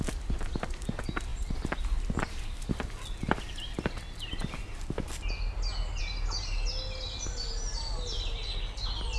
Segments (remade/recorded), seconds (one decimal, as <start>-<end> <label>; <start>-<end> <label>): 0.0-9.2 recorded